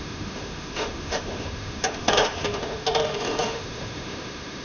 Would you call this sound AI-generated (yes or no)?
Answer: yes